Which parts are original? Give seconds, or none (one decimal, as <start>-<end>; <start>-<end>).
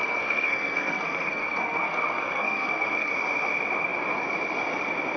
3.1-5.2